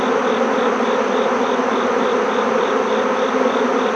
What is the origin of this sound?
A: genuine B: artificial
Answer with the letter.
A